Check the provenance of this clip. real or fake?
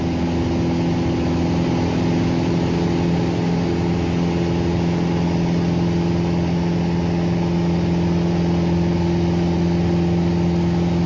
real